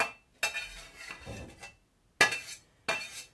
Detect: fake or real real